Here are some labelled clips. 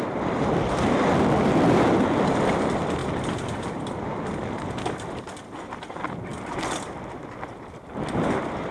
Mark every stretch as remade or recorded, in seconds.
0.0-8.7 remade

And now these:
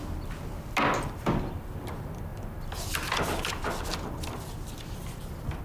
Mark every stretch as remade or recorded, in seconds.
0.0-5.6 recorded

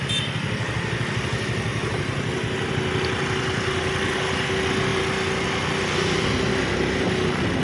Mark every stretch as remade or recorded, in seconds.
0.0-1.7 recorded; 1.7-2.7 remade; 2.7-7.6 recorded

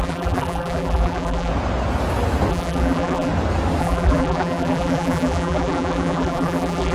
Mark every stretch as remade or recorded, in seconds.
0.0-1.5 remade; 1.5-2.5 recorded; 2.5-3.3 remade; 3.3-3.8 recorded; 3.8-6.9 remade

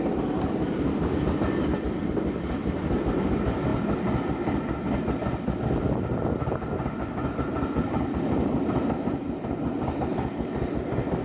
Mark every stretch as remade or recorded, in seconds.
0.0-11.2 recorded